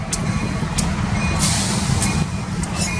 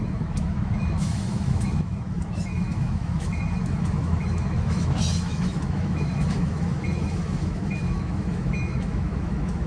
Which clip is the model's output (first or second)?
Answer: second